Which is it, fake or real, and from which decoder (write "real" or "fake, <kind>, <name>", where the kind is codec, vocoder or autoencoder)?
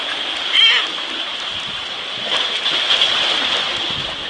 real